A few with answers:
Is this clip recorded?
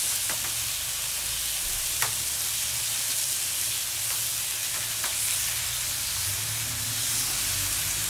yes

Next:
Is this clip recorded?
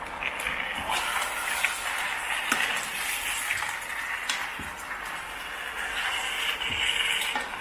yes